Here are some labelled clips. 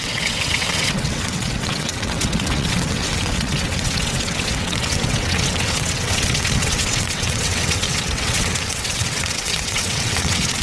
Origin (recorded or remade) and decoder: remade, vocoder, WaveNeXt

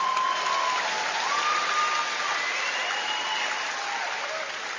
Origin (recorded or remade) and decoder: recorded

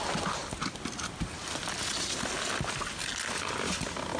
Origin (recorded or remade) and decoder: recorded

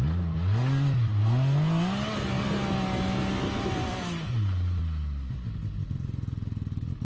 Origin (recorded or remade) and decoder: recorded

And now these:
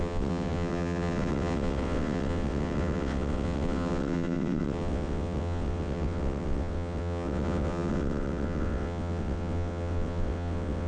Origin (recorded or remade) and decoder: remade, vocoder, WaveNeXt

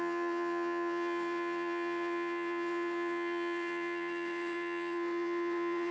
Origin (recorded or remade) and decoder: remade, vocoder, WaveNeXt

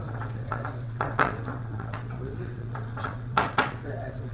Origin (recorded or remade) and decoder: remade, vocoder, WaveNeXt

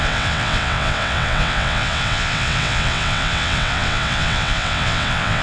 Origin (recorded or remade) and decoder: remade, vocoder, WaveNeXt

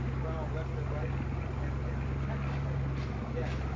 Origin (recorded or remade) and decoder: recorded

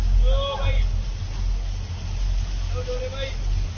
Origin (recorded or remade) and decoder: recorded